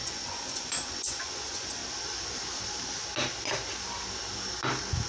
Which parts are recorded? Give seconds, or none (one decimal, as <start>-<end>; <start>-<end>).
1.8-5.1